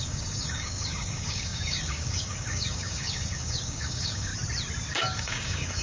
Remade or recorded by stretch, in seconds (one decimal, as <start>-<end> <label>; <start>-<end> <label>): 0.0-4.3 remade; 4.3-4.9 recorded; 4.9-5.8 remade